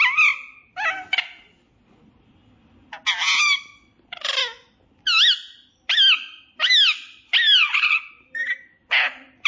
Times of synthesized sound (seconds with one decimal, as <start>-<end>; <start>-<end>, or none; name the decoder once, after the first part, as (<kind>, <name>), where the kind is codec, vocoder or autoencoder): 7.6-8.1 (vocoder, Vocos)

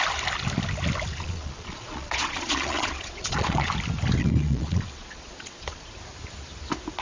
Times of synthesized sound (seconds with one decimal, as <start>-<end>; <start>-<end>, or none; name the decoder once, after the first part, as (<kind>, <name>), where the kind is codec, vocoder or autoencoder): 1.2-3.7 (vocoder, Vocos); 4.2-5.9